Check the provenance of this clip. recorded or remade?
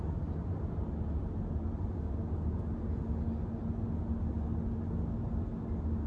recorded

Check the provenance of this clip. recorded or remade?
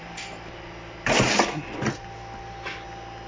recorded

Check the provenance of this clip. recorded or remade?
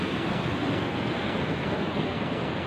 remade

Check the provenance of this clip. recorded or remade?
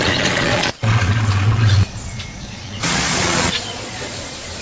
remade